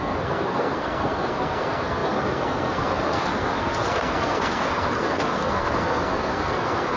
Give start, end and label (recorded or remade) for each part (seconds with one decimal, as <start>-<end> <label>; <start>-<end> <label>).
0.0-7.0 remade